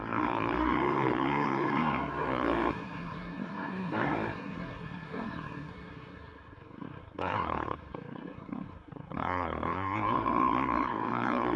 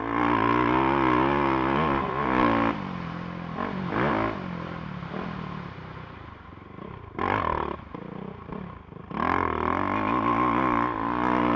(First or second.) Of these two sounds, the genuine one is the second